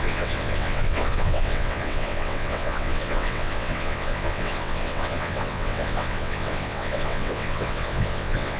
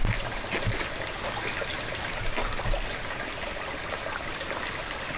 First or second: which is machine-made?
first